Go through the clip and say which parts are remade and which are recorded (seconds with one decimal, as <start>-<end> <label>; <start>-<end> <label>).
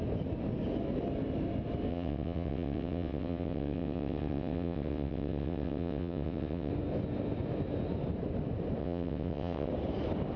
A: 0.0-1.9 recorded; 1.9-6.7 remade; 6.7-8.8 recorded; 8.8-9.7 remade; 9.7-10.4 recorded